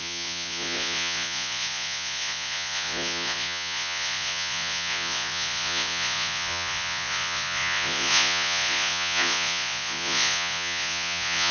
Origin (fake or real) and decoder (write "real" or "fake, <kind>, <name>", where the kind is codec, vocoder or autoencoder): fake, vocoder, Vocos